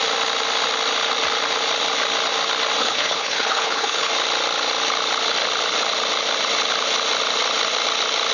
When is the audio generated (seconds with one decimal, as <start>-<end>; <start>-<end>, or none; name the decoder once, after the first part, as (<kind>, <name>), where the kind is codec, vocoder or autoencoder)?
2.8-4.1 (codec, HILCodec)